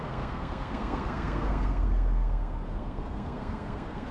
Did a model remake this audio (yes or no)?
yes